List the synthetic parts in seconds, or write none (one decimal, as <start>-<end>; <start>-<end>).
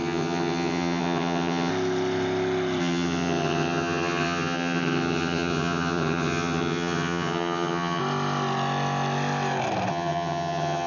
0.0-1.7; 2.8-8.0; 9.9-10.9